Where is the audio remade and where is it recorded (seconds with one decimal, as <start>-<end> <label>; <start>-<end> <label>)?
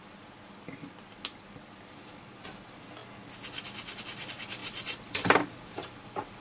0.0-4.6 recorded; 4.6-5.9 remade; 5.9-6.4 recorded